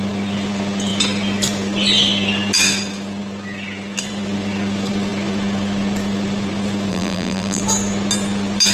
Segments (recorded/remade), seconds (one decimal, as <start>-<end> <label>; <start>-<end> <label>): 0.0-6.9 recorded; 6.9-7.6 remade; 7.6-8.7 recorded